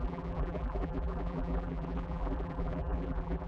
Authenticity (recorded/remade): remade